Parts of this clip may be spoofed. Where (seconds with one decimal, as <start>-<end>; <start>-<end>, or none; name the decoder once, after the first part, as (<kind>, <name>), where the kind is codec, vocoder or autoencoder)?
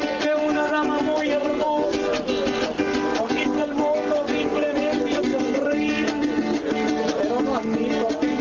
none